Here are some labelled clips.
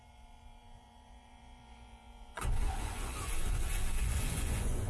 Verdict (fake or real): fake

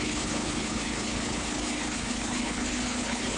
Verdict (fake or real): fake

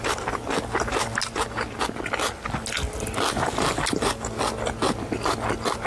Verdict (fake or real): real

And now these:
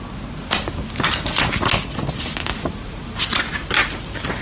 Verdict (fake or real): real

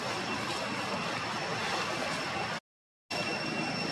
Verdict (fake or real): real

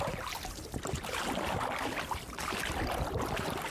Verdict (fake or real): fake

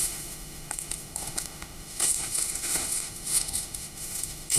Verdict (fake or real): fake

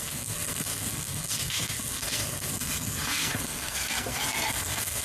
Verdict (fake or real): fake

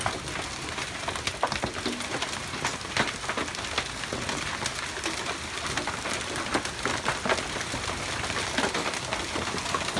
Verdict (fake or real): real